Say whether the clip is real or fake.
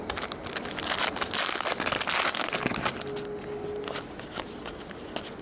real